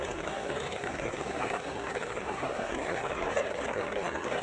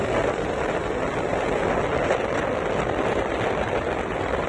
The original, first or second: second